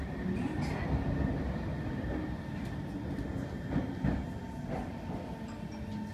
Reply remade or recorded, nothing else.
recorded